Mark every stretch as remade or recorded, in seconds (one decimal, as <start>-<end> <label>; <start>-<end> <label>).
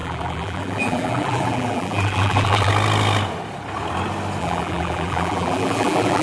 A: 0.0-2.7 remade; 2.7-4.4 recorded; 4.4-6.2 remade